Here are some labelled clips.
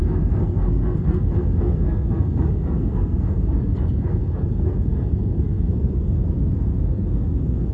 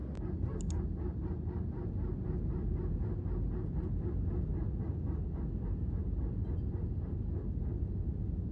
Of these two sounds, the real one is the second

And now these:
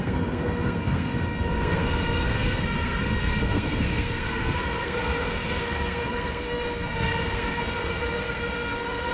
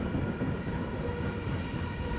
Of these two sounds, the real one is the second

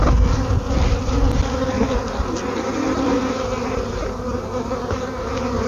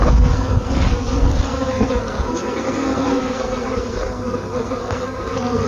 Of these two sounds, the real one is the first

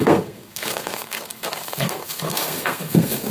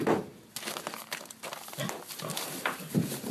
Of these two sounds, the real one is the second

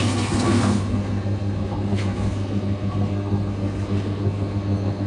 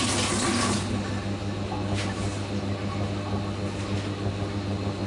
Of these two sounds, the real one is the second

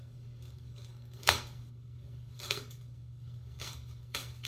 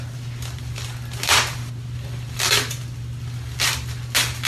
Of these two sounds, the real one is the second